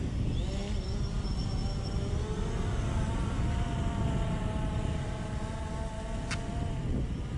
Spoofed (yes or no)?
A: no